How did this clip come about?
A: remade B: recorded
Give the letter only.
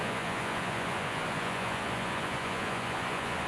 A